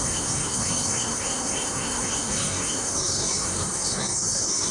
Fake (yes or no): yes